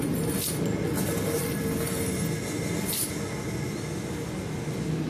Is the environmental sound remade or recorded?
recorded